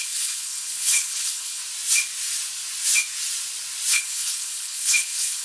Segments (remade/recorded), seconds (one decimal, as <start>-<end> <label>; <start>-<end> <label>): 0.0-1.6 remade; 1.6-3.9 recorded; 3.9-5.4 remade